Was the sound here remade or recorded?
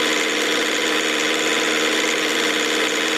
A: recorded